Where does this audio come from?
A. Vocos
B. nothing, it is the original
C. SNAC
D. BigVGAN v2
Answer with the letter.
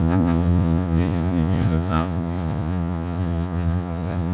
A